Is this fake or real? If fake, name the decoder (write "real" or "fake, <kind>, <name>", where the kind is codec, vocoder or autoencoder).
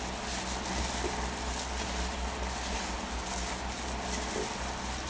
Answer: real